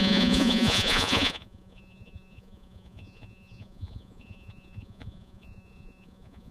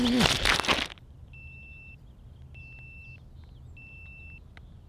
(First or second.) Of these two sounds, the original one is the second